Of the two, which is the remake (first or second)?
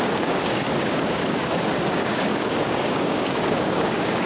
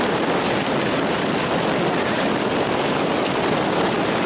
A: first